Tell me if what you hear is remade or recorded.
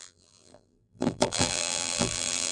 remade